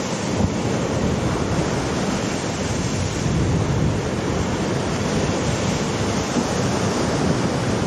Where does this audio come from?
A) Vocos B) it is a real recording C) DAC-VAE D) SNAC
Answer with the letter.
B